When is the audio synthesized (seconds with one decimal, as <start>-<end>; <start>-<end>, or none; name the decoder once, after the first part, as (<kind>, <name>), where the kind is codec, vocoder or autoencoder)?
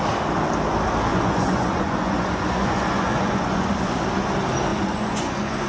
1.1-3.7 (vocoder, Vocos); 4.7-5.7